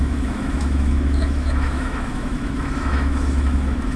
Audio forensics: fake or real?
fake